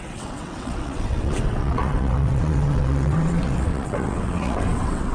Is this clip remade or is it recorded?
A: remade